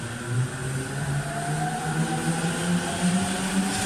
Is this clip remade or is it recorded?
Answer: recorded